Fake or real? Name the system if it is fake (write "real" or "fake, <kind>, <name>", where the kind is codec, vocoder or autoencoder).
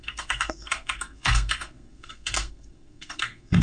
fake, codec, SNAC